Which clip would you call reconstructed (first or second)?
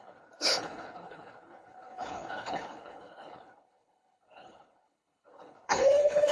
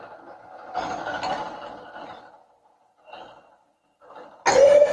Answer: first